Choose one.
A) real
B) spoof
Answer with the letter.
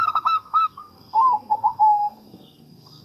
B